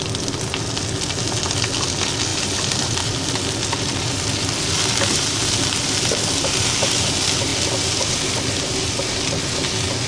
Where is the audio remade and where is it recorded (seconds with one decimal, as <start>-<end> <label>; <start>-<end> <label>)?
0.0-2.3 recorded; 2.3-7.1 remade; 7.1-10.1 recorded